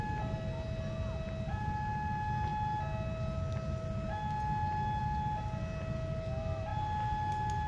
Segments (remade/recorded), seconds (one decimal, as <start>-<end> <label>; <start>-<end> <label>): 0.0-7.7 recorded